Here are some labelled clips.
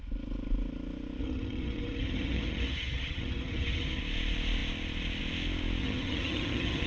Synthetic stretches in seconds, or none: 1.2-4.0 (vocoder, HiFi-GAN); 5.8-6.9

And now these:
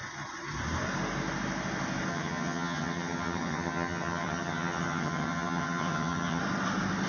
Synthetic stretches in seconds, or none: 2.1-6.4 (vocoder, HiFi-GAN)

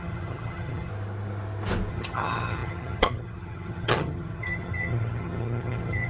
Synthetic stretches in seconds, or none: 0.0-0.9 (vocoder, HiFi-GAN); 1.9-6.1